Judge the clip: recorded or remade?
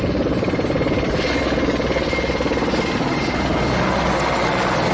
recorded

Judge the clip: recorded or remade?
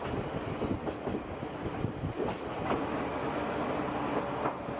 recorded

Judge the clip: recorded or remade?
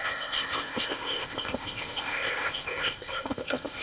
remade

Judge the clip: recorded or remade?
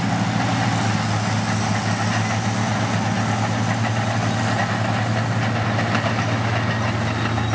recorded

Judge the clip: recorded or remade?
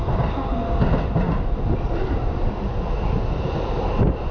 recorded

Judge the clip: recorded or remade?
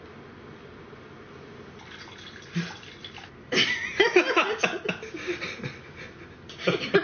recorded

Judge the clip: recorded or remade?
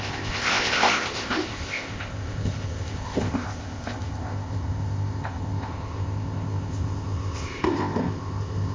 remade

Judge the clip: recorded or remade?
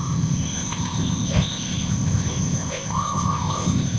remade